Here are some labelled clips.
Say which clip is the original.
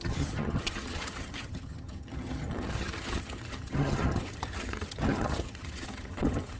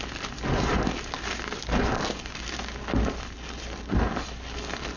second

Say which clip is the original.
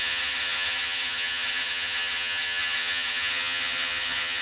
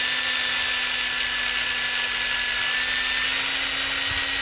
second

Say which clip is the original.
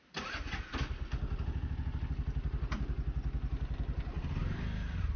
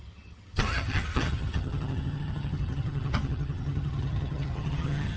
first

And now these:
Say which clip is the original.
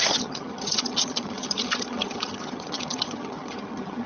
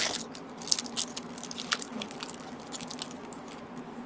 second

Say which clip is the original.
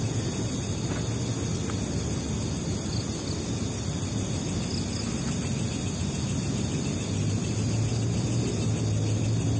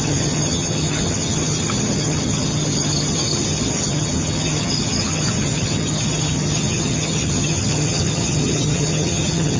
first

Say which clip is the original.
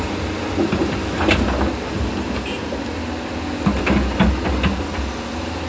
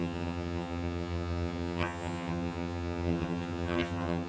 first